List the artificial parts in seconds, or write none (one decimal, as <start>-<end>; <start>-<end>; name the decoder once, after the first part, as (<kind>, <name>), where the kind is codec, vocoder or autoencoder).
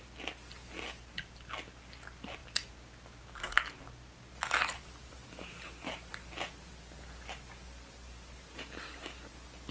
none